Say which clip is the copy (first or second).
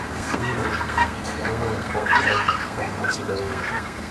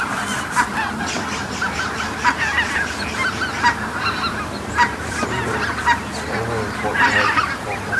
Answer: first